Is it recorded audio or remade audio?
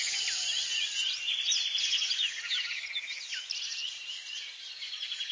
remade